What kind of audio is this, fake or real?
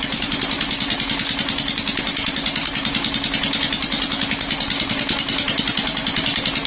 real